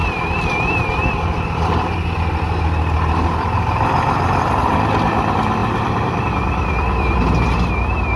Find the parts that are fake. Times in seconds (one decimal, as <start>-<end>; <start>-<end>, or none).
5.6-6.2